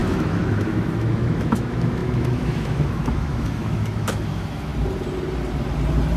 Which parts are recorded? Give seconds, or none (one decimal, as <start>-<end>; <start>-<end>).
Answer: 4.7-6.2